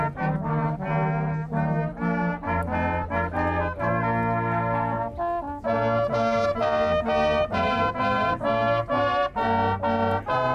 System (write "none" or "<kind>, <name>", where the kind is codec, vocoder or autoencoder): none